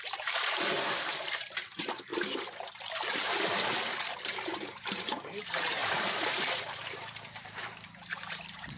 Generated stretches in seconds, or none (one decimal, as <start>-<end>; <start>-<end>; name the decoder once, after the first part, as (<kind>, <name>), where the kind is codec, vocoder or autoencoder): 0.0-2.1 (vocoder, BigVGAN v2); 4.5-8.8